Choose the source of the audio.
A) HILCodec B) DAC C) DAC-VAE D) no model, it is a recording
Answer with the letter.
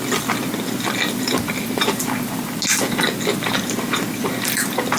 D